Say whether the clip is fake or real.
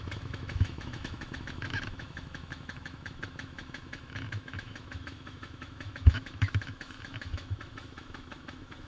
fake